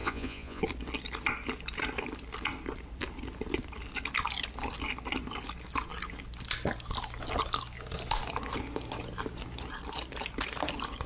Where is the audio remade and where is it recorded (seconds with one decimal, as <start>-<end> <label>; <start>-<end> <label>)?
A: 0.0-0.6 remade; 0.6-11.1 recorded